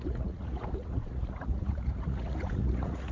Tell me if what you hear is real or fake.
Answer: fake